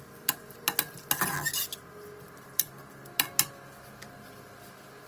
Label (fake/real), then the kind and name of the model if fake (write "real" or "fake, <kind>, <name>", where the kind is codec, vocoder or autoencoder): real